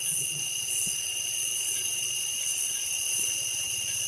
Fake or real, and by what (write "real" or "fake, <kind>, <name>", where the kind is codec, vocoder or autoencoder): fake, vocoder, WaveNeXt